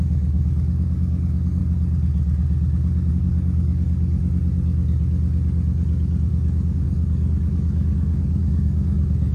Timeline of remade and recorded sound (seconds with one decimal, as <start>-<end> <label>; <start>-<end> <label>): 0.0-1.6 remade; 1.6-3.1 recorded; 3.1-4.2 remade; 4.2-6.3 recorded; 6.3-9.3 remade